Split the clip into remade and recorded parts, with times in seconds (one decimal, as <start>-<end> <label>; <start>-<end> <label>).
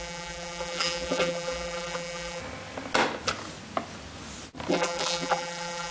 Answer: 0.0-2.4 remade; 2.4-4.7 recorded; 4.7-5.9 remade